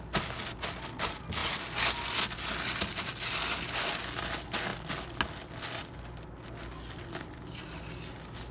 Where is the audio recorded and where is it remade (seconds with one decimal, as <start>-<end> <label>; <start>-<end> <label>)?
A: 0.0-8.5 recorded